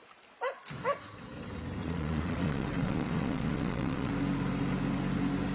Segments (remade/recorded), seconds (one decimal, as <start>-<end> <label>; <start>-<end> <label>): 0.0-1.8 recorded; 1.8-4.1 remade; 4.1-5.5 recorded